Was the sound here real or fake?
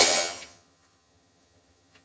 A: fake